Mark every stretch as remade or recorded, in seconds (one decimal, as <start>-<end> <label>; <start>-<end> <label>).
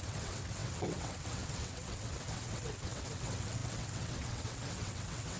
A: 0.0-5.4 remade